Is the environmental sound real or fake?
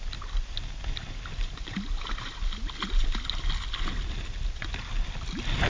real